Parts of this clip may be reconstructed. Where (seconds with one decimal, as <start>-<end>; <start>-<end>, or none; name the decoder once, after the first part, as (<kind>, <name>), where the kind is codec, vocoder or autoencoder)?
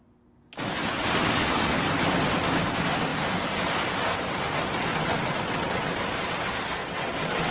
0.8-1.7 (vocoder, WaveNeXt); 4.9-6.0; 6.8-7.5